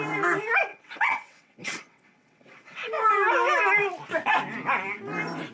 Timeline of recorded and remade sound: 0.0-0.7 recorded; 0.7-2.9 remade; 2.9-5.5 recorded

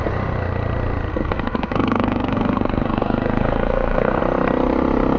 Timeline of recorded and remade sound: 0.0-1.1 recorded; 1.1-4.2 remade; 4.2-5.2 recorded

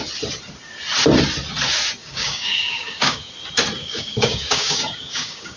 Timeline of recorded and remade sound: 0.0-2.0 recorded; 2.0-3.3 remade; 3.3-3.8 recorded; 3.8-5.6 remade

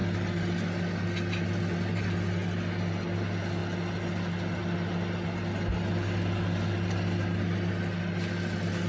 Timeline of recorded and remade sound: 0.0-8.9 recorded

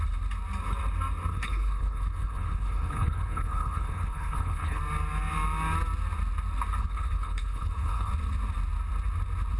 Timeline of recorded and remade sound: 0.0-1.3 recorded; 1.3-4.8 remade; 4.8-6.8 recorded; 6.8-8.1 remade; 8.1-9.6 recorded

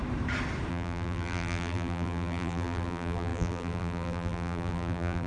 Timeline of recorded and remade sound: 0.0-0.7 recorded; 0.7-5.3 remade

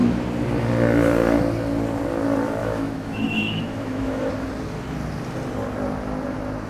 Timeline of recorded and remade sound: 0.0-2.6 recorded; 2.6-4.3 remade; 4.3-6.7 recorded